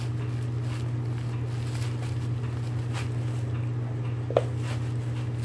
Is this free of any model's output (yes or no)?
yes